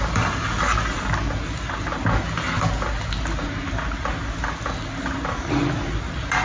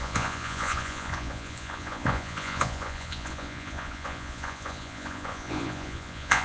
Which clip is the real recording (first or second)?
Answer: first